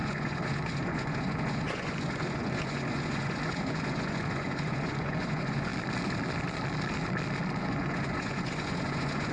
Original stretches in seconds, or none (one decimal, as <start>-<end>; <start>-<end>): 5.7-7.6